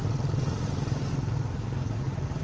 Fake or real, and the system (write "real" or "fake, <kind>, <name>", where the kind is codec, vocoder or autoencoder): real